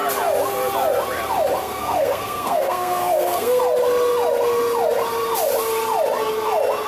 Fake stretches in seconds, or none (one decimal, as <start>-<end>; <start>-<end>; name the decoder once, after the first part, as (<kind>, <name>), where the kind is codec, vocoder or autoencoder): 1.6-3.6 (codec, SNAC)